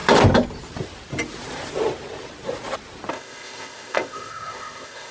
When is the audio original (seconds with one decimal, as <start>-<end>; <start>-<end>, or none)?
0.0-3.1